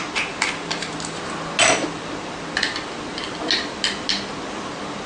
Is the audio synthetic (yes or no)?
no